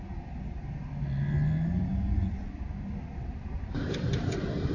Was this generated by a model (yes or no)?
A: no